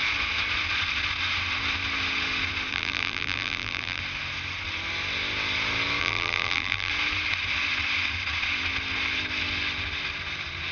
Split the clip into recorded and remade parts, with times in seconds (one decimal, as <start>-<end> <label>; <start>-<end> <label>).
0.0-2.7 recorded; 2.7-4.0 remade; 4.0-6.0 recorded; 6.0-6.9 remade; 6.9-10.7 recorded